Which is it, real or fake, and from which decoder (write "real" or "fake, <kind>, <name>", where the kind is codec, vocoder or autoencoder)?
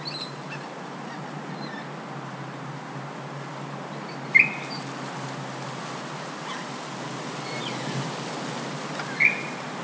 real